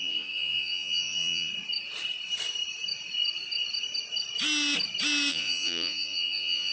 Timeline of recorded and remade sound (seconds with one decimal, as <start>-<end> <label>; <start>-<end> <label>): 0.0-1.5 remade; 1.5-5.3 recorded; 5.3-6.7 remade